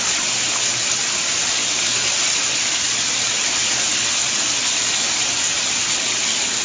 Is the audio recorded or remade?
recorded